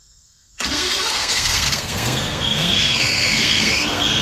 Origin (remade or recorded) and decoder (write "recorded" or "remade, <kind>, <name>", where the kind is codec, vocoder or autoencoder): remade, codec, SNAC